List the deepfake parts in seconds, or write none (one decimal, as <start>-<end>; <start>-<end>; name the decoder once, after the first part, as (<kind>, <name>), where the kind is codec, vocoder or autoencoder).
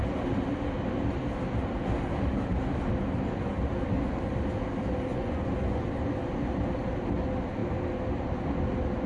5.1-5.9 (vocoder, Vocos)